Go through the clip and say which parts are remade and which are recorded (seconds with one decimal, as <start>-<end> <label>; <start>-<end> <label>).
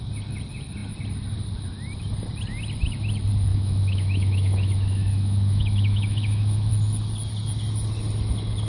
0.0-3.5 recorded; 3.5-6.7 remade; 6.7-8.7 recorded